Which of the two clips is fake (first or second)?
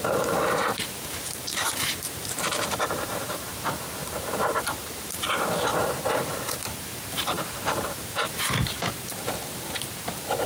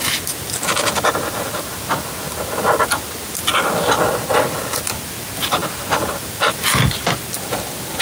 first